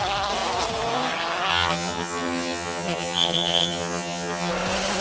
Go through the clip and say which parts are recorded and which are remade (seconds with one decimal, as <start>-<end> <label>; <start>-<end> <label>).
0.0-1.5 recorded; 1.5-4.5 remade; 4.5-5.0 recorded